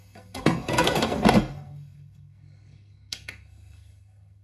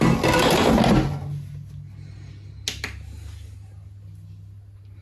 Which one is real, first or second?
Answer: second